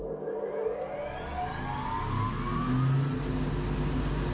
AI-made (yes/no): no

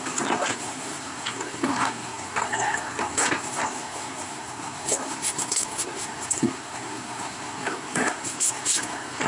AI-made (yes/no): yes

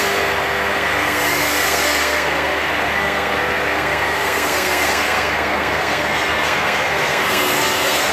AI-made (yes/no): yes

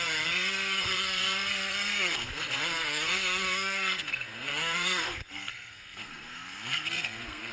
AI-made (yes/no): yes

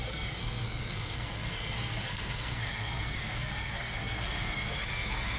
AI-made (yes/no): yes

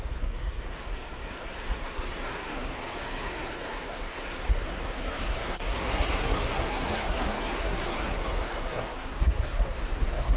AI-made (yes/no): yes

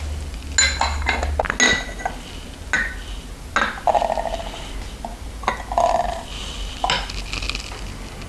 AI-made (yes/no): no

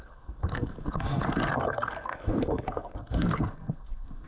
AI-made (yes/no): yes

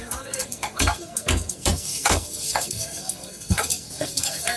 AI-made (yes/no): yes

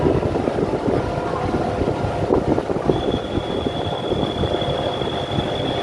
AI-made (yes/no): no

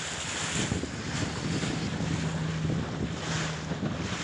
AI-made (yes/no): no